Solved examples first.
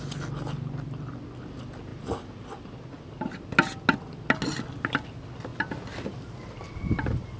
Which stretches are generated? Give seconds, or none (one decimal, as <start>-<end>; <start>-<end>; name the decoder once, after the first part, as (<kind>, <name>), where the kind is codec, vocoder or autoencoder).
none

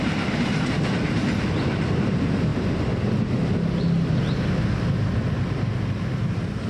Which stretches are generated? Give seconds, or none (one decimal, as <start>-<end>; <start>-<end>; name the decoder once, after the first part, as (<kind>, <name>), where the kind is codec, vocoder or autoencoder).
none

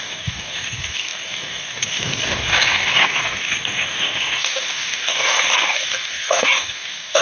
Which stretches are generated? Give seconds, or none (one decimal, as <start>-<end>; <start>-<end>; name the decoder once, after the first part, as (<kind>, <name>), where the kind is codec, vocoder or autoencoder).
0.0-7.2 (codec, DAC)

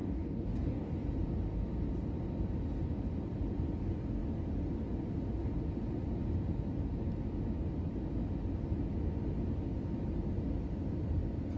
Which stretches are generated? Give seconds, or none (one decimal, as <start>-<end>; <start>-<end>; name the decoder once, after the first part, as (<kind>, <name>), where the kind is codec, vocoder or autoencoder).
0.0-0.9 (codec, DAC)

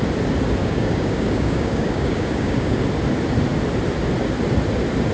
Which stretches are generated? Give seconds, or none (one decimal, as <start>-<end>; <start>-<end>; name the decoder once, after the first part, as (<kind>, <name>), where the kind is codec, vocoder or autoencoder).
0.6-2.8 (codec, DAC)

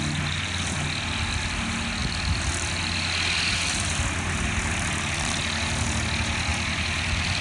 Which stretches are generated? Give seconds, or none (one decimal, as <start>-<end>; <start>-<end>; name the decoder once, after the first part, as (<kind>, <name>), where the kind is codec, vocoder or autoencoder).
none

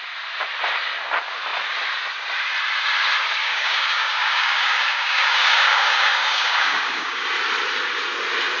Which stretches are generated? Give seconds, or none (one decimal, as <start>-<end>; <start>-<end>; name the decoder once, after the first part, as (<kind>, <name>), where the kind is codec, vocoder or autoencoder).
3.4-7.2 (codec, DAC)